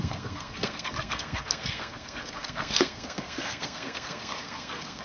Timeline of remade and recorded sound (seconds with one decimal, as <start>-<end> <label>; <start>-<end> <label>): 0.0-5.0 remade